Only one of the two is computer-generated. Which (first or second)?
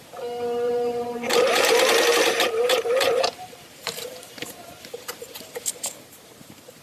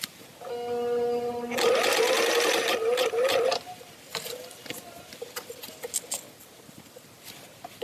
first